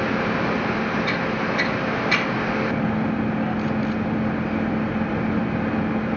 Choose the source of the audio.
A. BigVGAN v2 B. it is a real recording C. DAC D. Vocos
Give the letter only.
B